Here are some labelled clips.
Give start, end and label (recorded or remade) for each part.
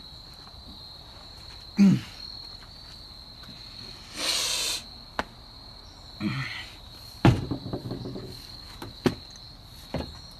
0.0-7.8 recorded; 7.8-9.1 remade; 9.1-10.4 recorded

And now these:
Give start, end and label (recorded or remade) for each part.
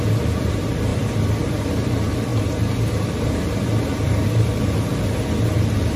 0.0-0.9 remade; 0.9-1.4 recorded; 1.4-2.3 remade; 2.3-2.8 recorded; 2.8-6.0 remade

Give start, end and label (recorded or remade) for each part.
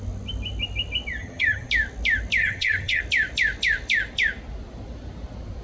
0.0-1.2 recorded; 1.2-1.7 remade; 1.7-2.4 recorded; 2.4-3.0 remade; 3.0-5.6 recorded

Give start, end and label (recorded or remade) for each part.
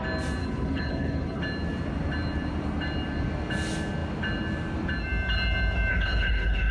0.0-0.4 recorded; 0.4-1.4 remade; 1.4-5.9 recorded; 5.9-6.7 remade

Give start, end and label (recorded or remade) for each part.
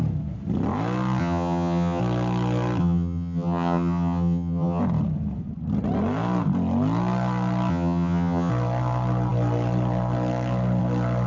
0.0-1.2 recorded; 1.2-2.0 remade; 2.0-2.8 recorded; 2.8-4.8 remade; 4.8-7.7 recorded; 7.7-8.5 remade; 8.5-11.3 recorded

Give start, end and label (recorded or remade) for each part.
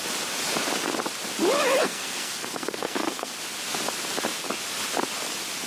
0.0-1.8 recorded; 1.8-3.3 remade; 3.3-5.7 recorded